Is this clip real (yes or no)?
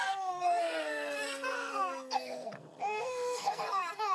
no